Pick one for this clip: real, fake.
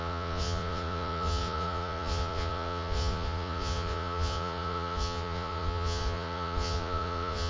fake